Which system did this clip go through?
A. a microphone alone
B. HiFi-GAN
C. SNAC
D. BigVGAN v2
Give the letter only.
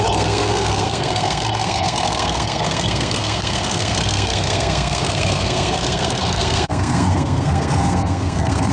C